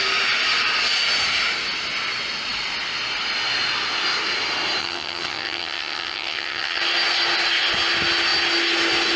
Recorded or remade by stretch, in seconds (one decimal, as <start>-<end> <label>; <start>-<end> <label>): 0.0-4.8 recorded; 4.8-6.8 remade; 6.8-9.2 recorded